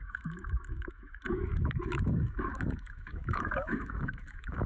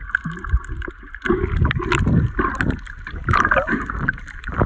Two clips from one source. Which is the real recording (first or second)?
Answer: second